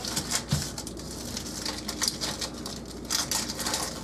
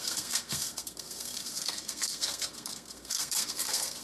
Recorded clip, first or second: first